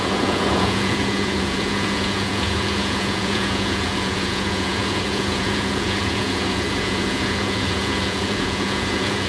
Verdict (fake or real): fake